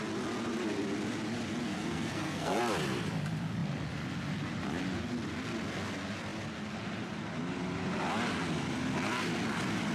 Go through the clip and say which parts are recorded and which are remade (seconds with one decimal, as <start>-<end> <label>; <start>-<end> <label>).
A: 0.0-1.6 recorded; 1.6-2.6 remade; 2.6-9.9 recorded